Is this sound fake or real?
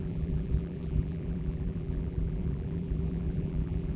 fake